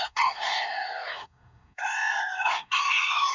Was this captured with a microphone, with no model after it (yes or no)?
no